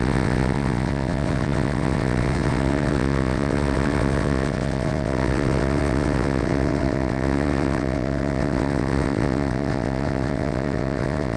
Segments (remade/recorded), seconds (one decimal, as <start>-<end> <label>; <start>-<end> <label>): 0.0-11.4 remade